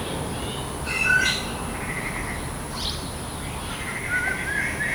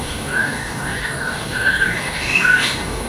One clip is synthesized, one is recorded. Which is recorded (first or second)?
first